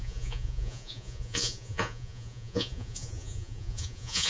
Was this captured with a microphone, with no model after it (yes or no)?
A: no